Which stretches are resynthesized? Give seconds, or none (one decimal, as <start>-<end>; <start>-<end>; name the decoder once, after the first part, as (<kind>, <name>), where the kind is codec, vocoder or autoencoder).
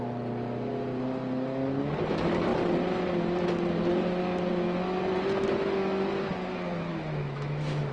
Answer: 6.9-7.9 (autoencoder, DAC-VAE)